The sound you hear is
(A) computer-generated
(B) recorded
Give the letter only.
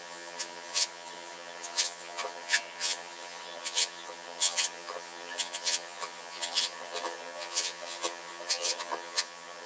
A